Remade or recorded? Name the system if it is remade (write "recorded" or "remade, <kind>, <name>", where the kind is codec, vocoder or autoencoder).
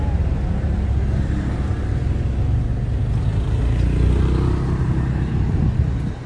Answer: recorded